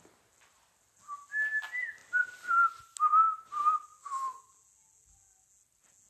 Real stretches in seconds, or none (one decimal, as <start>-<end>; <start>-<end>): 0.0-6.1